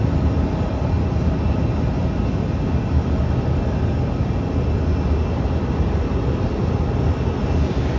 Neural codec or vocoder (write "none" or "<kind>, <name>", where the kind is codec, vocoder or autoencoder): none